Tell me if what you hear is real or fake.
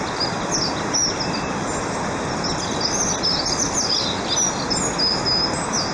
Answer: real